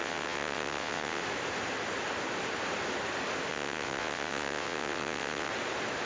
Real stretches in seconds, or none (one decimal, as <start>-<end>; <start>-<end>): 1.2-3.5; 5.5-6.1